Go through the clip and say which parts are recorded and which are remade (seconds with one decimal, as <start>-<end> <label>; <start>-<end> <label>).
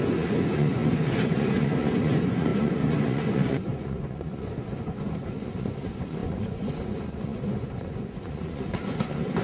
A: 0.0-9.4 remade